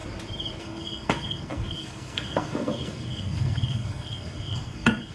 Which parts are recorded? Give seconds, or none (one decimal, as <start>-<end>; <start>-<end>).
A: 0.0-0.6